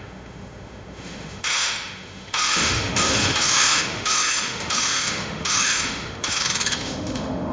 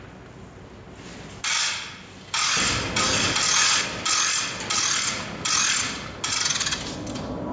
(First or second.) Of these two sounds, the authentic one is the second